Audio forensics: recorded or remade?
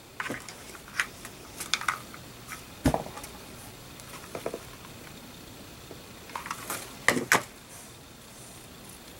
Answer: recorded